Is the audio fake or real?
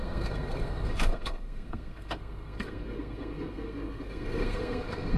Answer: fake